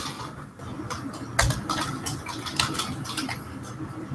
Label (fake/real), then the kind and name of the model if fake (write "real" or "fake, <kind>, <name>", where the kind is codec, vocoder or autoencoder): real